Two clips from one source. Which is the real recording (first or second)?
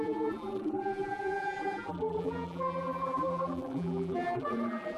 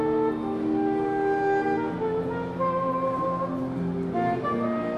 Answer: second